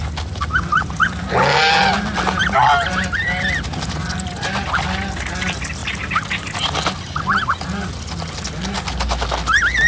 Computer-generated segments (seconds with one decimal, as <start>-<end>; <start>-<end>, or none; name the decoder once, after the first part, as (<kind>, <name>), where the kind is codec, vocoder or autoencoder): none